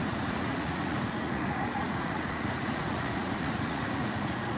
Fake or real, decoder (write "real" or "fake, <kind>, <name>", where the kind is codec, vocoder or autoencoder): fake, vocoder, Vocos